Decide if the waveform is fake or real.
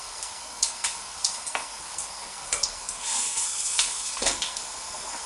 fake